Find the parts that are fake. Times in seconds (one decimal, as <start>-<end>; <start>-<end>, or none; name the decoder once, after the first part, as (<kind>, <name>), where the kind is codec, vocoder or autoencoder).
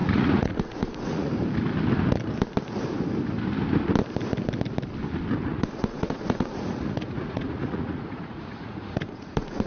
0.0-1.3 (vocoder, Vocos); 5.5-9.7